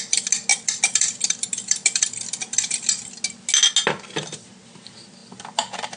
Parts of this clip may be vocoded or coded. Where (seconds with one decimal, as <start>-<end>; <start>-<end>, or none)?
0.5-3.1; 5.2-6.0